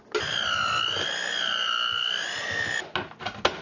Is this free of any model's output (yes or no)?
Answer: yes